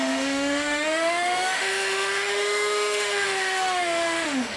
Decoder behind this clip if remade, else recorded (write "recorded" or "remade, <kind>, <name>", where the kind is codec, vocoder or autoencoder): remade, autoencoder, DAC-VAE